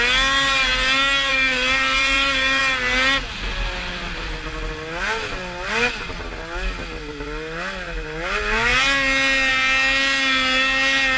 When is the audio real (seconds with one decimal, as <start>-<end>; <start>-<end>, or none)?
0.0-1.3; 2.6-11.2